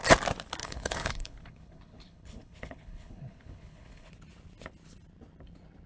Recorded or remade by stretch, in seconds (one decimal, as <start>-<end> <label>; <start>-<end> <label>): 0.0-0.6 recorded; 0.6-4.1 remade; 4.1-5.9 recorded

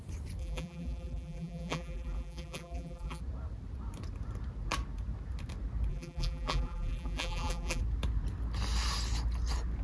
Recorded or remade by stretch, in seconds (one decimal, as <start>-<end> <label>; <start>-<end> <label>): 0.0-0.4 recorded; 0.4-3.2 remade; 3.2-5.9 recorded; 5.9-7.8 remade; 7.8-9.8 recorded

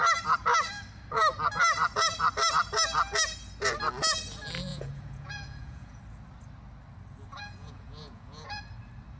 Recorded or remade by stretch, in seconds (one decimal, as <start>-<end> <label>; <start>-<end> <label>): 0.0-4.7 recorded; 4.7-6.0 remade; 6.0-7.3 recorded; 7.3-8.6 remade; 8.6-9.2 recorded

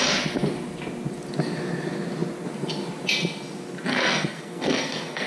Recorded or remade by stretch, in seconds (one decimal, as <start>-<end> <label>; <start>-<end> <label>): 0.0-3.9 recorded; 3.9-5.3 remade

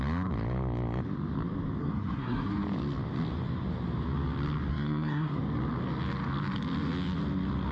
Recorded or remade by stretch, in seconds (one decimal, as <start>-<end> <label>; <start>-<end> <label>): 0.0-1.8 recorded; 1.8-2.5 remade; 2.5-4.7 recorded; 4.7-5.4 remade; 5.4-7.7 recorded

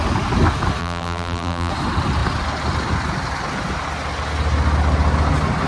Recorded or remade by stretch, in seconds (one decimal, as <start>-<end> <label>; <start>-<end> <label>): 0.0-0.8 recorded; 0.8-1.7 remade; 1.7-5.7 recorded